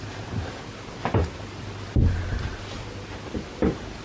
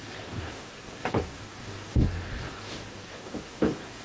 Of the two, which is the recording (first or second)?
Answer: first